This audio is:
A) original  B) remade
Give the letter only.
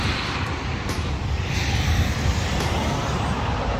B